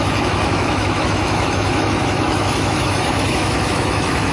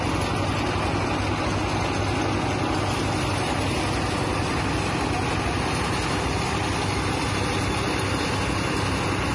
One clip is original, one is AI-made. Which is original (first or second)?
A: second